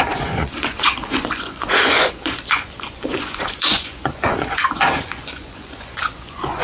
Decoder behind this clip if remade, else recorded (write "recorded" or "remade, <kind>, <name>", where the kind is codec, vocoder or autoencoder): remade, vocoder, Vocos